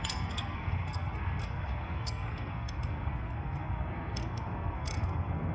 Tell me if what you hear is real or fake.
fake